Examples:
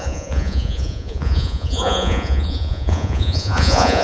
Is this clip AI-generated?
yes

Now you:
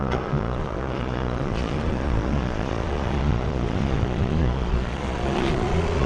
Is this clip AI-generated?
yes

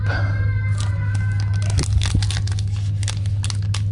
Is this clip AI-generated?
no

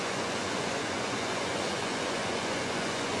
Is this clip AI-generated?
yes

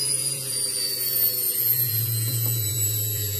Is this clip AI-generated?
yes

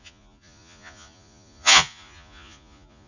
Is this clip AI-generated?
yes